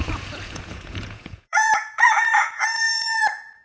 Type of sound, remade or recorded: remade